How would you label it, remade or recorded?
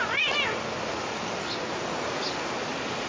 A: recorded